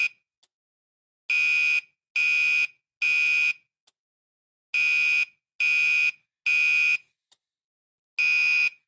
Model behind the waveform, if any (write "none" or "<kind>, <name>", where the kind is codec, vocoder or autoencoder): none